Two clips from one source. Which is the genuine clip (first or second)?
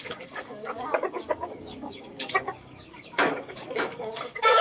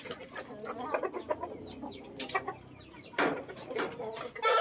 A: second